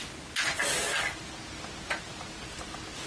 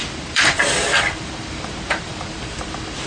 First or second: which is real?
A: first